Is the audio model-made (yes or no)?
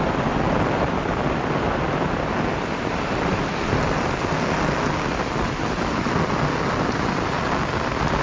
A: no